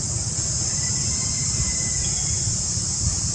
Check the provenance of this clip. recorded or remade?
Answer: recorded